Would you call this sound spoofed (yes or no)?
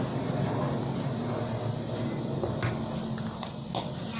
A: no